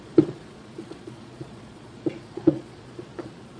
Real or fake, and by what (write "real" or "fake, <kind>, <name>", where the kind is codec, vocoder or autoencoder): fake, vocoder, Vocos